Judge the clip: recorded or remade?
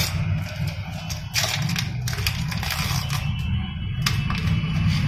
recorded